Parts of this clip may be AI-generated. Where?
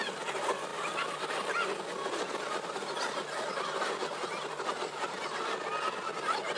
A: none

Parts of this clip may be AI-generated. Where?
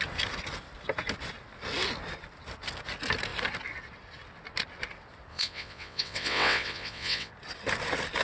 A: 5.3-7.3 (vocoder, WaveNeXt)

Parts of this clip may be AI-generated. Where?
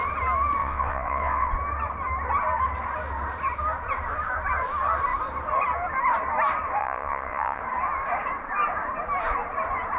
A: 0.6-1.5 (vocoder, WaveNeXt); 6.8-7.6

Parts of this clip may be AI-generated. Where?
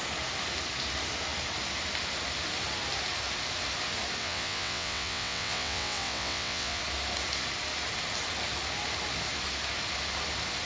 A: 4.2-6.8 (vocoder, WaveNeXt)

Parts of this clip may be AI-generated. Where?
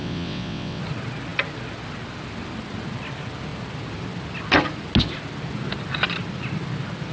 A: 0.0-0.8 (vocoder, WaveNeXt)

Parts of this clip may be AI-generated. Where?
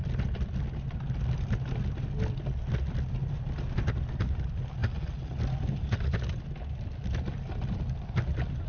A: none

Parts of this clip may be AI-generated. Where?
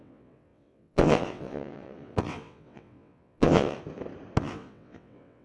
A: 0.0-3.8 (vocoder, WaveNeXt); 4.4-5.4